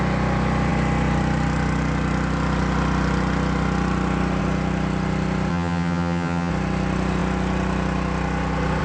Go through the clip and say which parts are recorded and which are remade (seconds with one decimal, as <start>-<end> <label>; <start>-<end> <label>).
0.0-5.5 recorded; 5.5-6.5 remade; 6.5-8.8 recorded